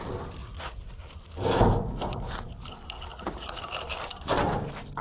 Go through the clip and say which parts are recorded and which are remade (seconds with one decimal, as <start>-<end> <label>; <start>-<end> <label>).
0.0-0.4 recorded; 0.4-1.0 remade; 1.0-3.1 recorded; 3.1-3.6 remade; 3.6-5.0 recorded